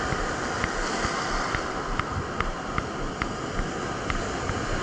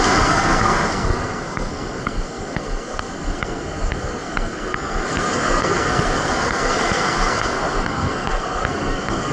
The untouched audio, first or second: first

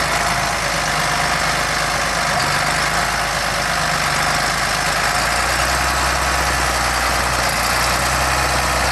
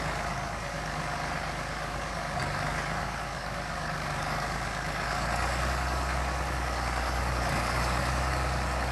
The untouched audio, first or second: first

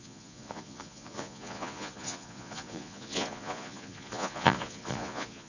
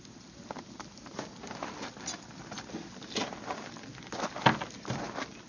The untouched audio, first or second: second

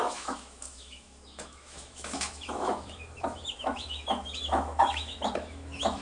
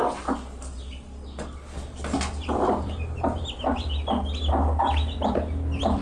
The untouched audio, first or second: second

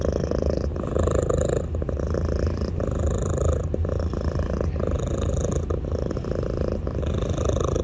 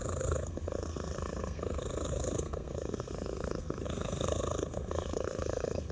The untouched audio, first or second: first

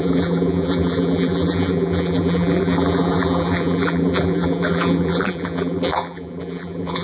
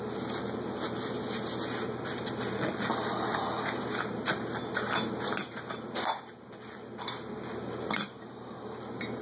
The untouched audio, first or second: second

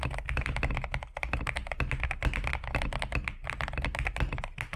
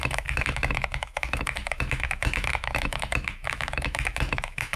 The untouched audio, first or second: first